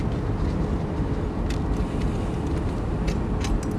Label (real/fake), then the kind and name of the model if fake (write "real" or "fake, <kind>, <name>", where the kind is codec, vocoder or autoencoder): real